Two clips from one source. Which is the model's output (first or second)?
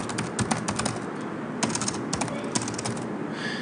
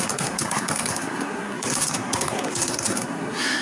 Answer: second